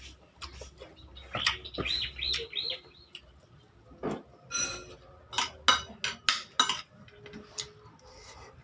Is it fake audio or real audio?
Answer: real